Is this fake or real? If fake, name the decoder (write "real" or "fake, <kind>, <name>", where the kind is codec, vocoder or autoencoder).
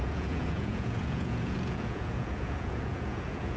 fake, vocoder, Vocos